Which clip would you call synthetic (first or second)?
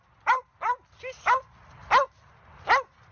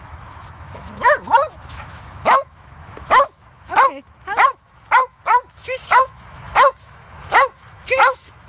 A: second